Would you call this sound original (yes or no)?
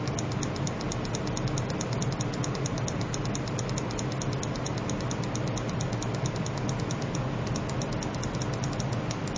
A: yes